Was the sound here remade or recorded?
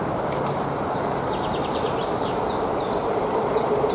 remade